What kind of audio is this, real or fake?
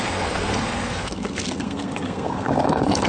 fake